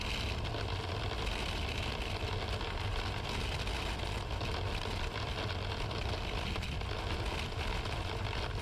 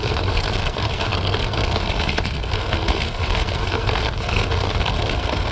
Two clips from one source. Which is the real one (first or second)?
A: first